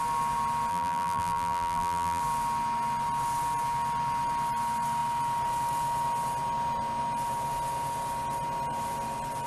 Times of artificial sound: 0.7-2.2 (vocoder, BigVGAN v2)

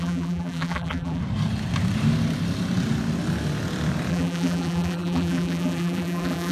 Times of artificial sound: 0.0-1.2 (vocoder, BigVGAN v2); 4.1-6.5

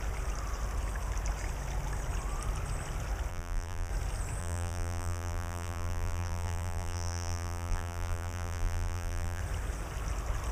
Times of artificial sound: 3.3-3.9 (vocoder, BigVGAN v2); 4.4-9.4

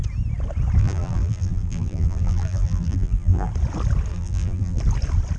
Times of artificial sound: 0.8-3.5 (vocoder, BigVGAN v2); 4.1-4.8

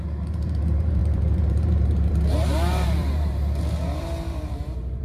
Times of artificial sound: 0.0-5.0 (vocoder, BigVGAN v2)